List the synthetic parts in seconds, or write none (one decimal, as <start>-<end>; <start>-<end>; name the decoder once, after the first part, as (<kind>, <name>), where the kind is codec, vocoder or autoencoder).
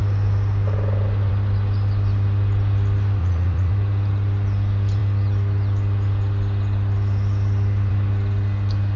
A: 3.2-3.7 (vocoder, Vocos)